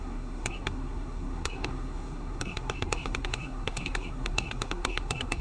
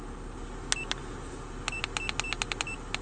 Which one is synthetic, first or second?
first